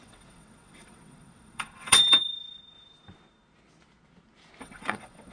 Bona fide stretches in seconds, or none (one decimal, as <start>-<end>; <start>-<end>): 2.2-4.6